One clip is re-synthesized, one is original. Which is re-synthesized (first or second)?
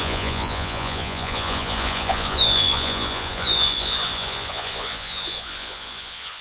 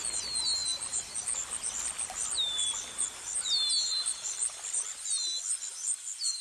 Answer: first